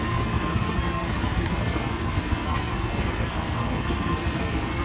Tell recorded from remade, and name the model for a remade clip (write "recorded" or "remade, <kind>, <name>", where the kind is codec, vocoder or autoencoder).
remade, codec, SNAC